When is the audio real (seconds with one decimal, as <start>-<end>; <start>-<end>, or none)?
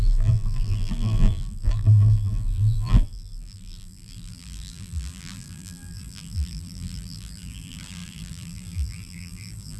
none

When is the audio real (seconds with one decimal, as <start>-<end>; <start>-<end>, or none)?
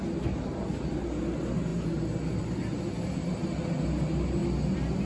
0.0-3.2; 3.8-5.1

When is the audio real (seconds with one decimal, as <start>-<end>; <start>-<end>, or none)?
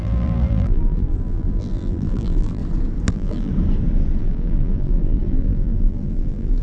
2.6-3.1; 3.5-4.2